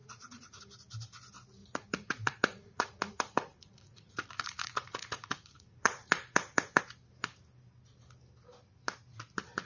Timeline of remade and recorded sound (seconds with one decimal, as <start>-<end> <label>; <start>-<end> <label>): 0.0-0.6 remade; 0.6-1.6 recorded; 1.6-6.8 remade; 6.8-9.7 recorded